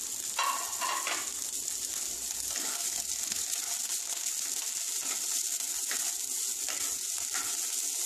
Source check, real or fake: real